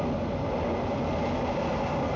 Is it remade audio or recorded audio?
recorded